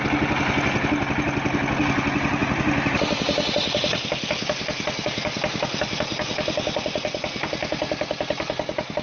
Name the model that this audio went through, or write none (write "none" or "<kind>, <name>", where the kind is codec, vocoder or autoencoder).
none